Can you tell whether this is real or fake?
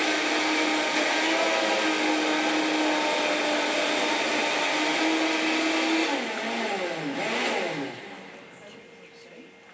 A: real